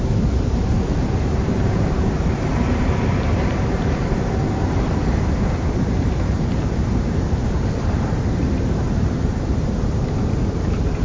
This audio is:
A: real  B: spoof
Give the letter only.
B